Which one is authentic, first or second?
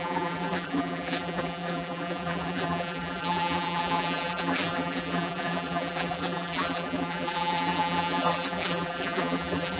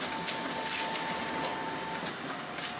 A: second